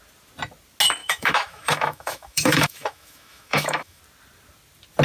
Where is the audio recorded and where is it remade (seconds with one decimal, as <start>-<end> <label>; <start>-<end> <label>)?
0.0-1.0 recorded; 1.0-4.0 remade; 4.0-5.0 recorded